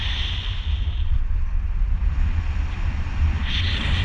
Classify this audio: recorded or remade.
recorded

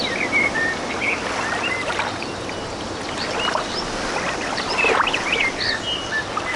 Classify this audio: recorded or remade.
recorded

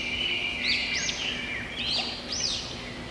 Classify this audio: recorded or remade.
recorded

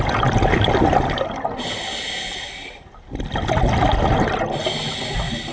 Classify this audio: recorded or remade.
recorded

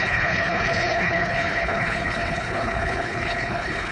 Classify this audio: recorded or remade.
remade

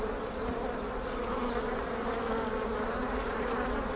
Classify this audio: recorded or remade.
recorded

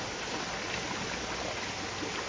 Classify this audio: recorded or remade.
recorded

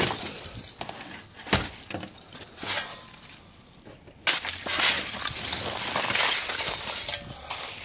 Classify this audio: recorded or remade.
recorded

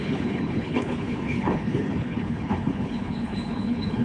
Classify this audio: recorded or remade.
remade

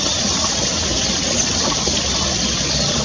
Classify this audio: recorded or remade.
recorded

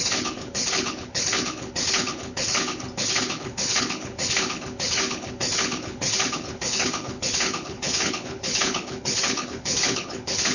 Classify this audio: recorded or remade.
remade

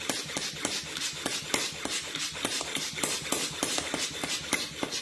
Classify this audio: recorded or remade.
recorded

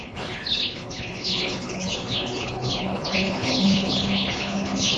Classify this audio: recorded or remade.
remade